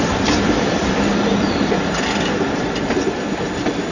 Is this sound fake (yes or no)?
yes